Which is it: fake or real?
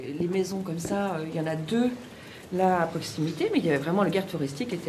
real